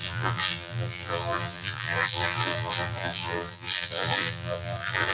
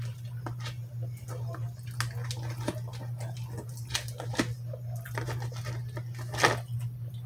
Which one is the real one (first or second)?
second